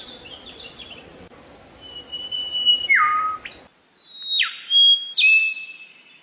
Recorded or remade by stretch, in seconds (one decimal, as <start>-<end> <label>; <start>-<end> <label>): 0.0-6.2 recorded